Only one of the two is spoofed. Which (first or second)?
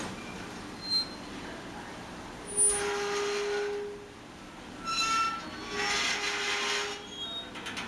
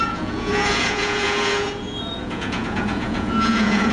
second